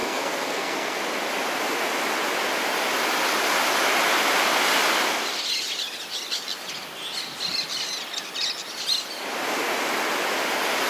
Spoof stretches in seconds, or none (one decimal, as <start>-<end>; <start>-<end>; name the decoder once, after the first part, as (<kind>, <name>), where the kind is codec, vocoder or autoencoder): 0.0-1.0 (codec, SNAC)